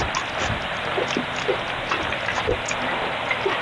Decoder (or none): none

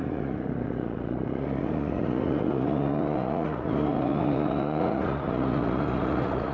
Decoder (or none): vocoder, Vocos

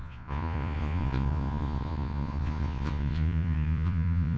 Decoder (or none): vocoder, Vocos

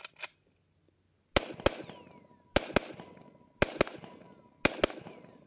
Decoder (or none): none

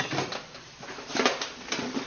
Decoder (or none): none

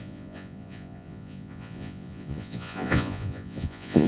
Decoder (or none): vocoder, Vocos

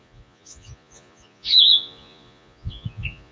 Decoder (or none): vocoder, Vocos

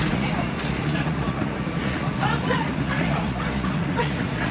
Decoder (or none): vocoder, Vocos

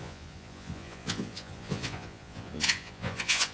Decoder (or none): vocoder, Vocos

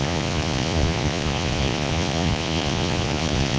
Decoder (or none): vocoder, Vocos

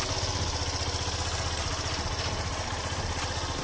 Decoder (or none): none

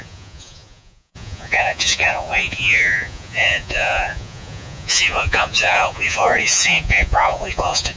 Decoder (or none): vocoder, Vocos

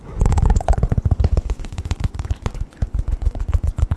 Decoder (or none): vocoder, Vocos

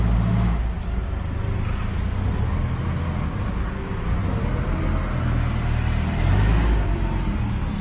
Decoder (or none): none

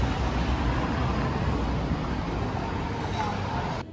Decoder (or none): none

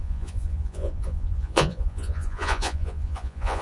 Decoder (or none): vocoder, Vocos